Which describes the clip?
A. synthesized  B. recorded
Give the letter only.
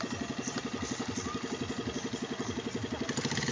B